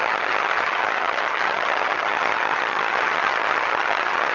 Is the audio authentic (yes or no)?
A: no